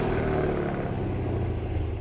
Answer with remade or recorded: recorded